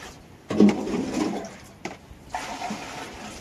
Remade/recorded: remade